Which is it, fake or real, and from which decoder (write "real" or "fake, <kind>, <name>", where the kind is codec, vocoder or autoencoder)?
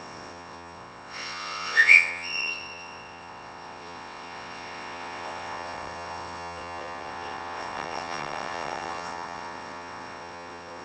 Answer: fake, vocoder, WaveNeXt